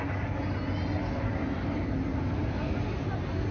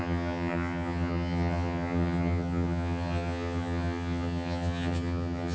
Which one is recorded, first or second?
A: first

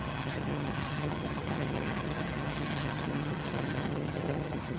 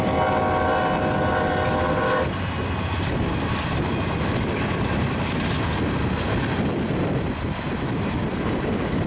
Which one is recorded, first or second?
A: second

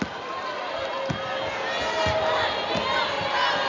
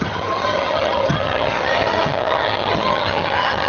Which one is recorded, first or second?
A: first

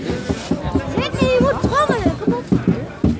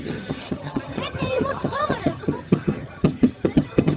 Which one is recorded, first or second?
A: first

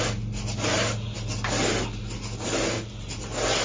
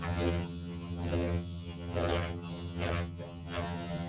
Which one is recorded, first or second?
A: first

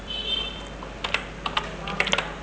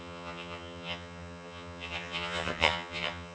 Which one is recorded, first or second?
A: first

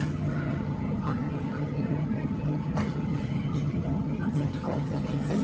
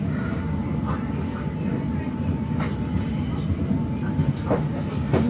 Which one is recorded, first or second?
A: second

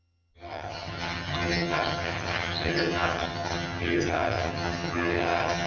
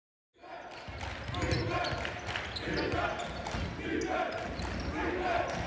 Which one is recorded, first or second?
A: second